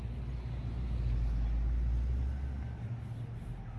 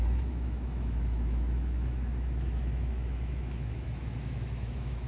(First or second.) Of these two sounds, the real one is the first